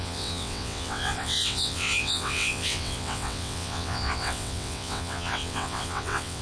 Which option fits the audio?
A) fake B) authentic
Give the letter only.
A